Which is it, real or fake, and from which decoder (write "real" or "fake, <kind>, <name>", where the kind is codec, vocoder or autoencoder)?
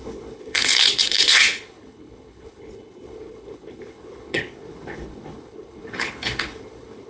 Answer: fake, codec, HILCodec